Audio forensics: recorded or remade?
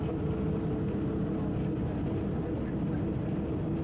recorded